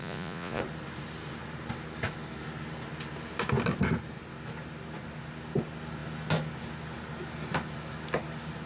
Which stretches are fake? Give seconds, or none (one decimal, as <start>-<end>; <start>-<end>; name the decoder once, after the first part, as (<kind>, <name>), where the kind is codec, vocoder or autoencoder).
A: 0.0-0.6 (vocoder, Vocos)